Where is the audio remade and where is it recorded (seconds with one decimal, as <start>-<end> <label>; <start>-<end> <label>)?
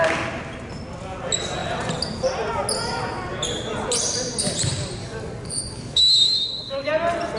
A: 0.0-5.0 recorded; 5.0-6.9 remade; 6.9-7.4 recorded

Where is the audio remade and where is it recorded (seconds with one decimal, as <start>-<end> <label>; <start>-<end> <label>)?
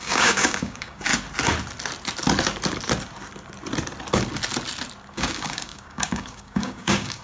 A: 0.0-1.1 remade; 1.1-5.1 recorded; 5.1-7.2 remade